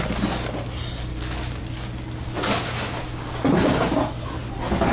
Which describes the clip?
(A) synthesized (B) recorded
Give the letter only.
B